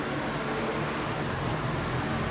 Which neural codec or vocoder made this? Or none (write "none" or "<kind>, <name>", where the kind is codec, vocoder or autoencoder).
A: none